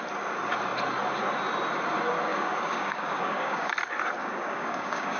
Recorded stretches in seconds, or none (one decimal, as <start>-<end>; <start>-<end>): 0.0-2.3; 3.7-4.2